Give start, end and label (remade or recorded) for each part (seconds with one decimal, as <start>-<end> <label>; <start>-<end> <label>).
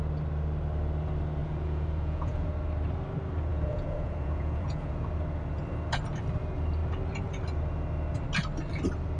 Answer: 0.0-1.4 recorded; 1.4-2.5 remade; 2.5-3.5 recorded; 3.5-4.9 remade; 4.9-9.2 recorded